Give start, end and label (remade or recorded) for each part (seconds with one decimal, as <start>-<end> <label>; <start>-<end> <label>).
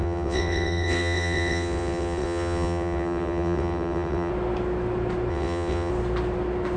0.0-4.3 remade; 4.3-5.3 recorded; 5.3-5.9 remade; 5.9-6.8 recorded